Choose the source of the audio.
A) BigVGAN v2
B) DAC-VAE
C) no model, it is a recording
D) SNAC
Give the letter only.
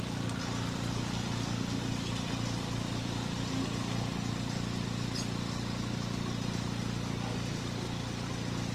C